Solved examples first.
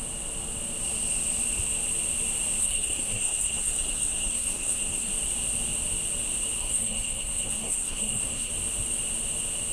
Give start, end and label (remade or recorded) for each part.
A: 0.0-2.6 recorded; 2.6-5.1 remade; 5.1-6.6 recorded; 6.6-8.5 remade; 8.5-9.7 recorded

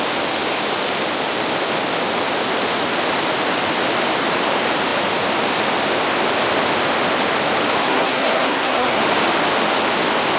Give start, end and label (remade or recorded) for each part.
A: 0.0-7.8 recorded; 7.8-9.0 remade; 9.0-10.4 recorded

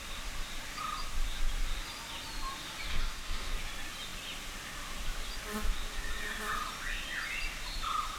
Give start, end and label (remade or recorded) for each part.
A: 0.0-2.9 recorded; 2.9-3.6 remade; 3.6-8.2 recorded